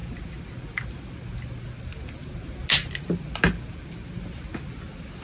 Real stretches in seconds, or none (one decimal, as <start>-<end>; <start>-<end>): 0.0-5.2